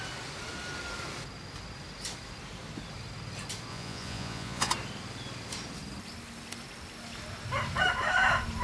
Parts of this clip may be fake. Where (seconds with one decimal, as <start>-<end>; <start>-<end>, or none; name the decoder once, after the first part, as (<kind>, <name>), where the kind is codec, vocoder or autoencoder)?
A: 3.7-4.7 (vocoder, Vocos)